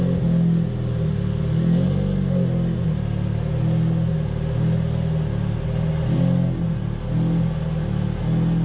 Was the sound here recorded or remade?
recorded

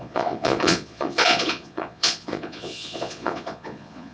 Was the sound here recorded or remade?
remade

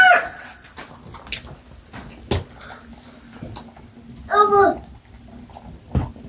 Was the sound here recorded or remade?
recorded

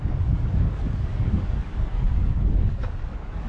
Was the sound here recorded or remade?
remade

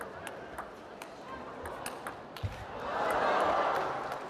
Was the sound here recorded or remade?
recorded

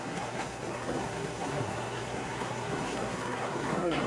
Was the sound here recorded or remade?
remade